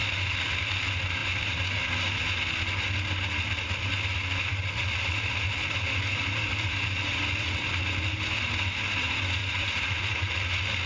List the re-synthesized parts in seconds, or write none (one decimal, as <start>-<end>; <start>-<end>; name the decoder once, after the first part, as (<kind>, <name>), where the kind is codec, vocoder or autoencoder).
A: 9.4-10.3 (vocoder, Vocos)